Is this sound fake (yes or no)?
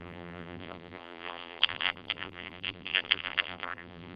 yes